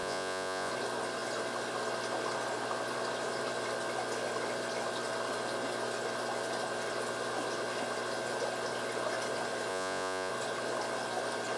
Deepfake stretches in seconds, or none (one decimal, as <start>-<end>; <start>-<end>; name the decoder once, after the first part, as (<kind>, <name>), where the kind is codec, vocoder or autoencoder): 0.0-0.7 (vocoder, Vocos); 9.7-10.3